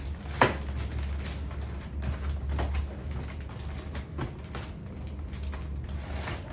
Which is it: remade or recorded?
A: recorded